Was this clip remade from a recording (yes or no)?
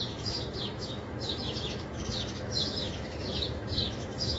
yes